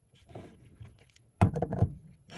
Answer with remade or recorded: remade